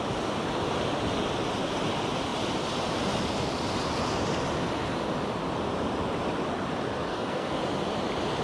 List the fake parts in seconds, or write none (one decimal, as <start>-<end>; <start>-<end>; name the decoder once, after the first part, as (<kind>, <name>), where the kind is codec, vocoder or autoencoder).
7.1-7.6 (codec, SNAC)